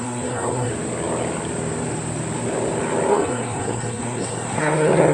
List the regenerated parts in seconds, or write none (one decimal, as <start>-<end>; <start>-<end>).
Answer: 0.0-0.7; 3.1-5.1